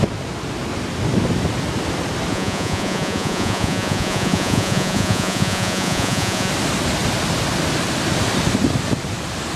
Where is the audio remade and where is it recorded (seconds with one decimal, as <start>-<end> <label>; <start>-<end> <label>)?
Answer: 0.0-2.3 recorded; 2.3-6.5 remade; 6.5-9.6 recorded